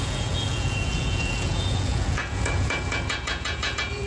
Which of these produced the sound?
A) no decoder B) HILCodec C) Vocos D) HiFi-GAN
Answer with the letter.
C